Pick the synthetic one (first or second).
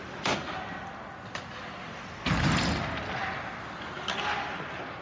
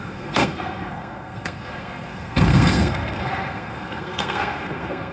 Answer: second